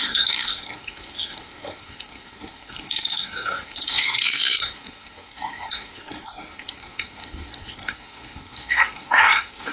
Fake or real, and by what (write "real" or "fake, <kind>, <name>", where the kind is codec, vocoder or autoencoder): fake, codec, SNAC